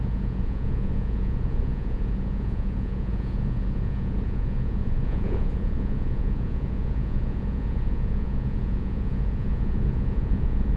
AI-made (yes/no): yes